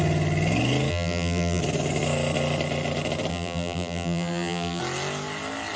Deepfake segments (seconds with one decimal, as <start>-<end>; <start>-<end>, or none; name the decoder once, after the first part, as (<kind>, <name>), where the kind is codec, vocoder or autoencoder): 0.9-1.6 (vocoder, BigVGAN v2); 3.3-4.8

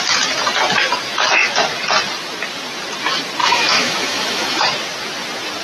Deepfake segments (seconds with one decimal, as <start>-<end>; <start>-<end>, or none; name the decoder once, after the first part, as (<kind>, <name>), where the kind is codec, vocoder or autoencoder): 3.4-4.6 (autoencoder, DAC-VAE)